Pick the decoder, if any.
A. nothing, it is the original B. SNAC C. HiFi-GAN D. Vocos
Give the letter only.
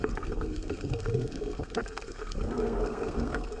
B